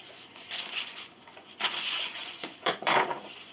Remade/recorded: remade